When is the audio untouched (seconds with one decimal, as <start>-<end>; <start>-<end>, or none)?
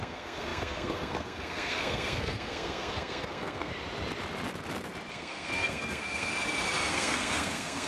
3.7-5.1; 6.3-6.9